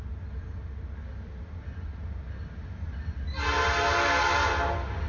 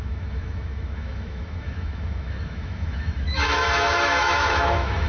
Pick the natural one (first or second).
first